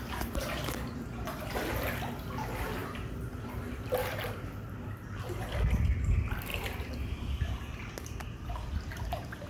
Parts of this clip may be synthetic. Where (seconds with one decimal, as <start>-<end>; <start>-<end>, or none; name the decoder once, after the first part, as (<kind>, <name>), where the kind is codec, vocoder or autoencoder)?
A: 2.8-4.7 (vocoder, BigVGAN v2)